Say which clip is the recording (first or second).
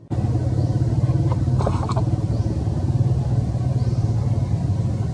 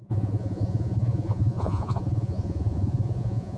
first